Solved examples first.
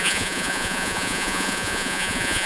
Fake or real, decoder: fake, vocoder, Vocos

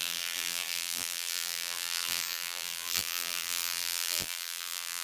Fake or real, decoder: fake, vocoder, BigVGAN v2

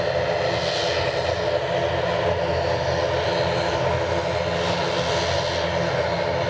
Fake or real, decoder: real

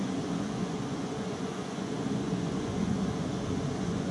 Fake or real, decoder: fake, vocoder, Vocos